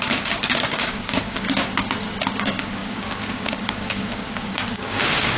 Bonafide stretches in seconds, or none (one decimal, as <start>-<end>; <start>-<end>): 1.7-2.4